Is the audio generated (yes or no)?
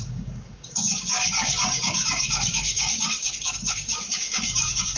yes